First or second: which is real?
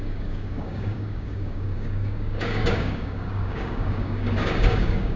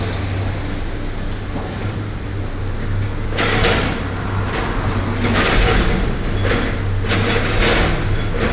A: second